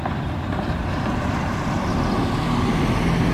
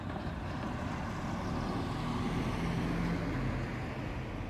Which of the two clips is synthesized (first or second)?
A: first